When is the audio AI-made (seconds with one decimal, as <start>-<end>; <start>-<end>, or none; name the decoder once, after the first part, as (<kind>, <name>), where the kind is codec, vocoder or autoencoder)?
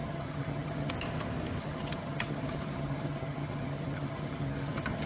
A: 0.0-0.9 (vocoder, HiFi-GAN); 1.6-5.1